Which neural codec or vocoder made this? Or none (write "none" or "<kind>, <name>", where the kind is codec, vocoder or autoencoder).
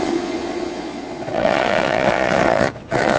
vocoder, Vocos